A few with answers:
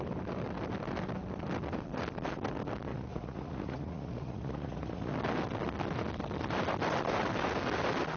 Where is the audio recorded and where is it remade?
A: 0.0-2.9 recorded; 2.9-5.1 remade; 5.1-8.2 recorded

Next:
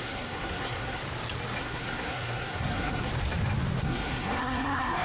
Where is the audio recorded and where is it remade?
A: 0.0-1.0 remade; 1.0-1.6 recorded; 1.6-3.1 remade; 3.1-3.8 recorded; 3.8-5.0 remade

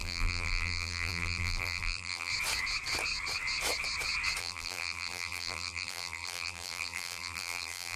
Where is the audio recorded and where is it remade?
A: 0.0-2.3 remade; 2.3-4.4 recorded; 4.4-8.0 remade